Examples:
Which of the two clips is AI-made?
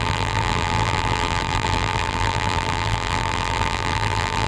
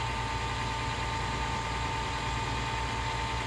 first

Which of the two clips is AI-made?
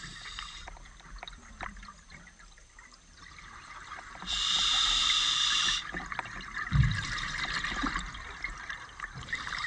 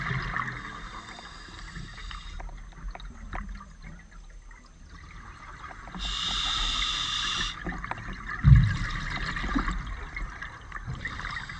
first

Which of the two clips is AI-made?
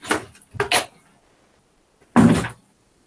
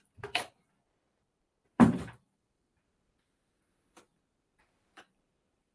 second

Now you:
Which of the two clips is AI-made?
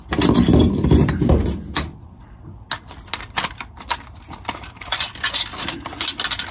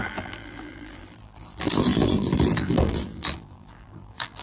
second